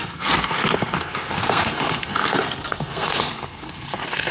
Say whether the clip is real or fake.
fake